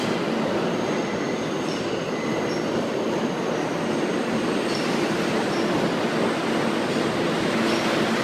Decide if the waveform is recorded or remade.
recorded